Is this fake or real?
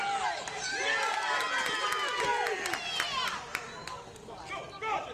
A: real